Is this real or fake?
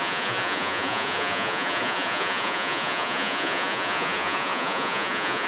fake